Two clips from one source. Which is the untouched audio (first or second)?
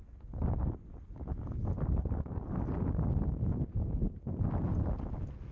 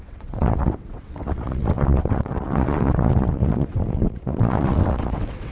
first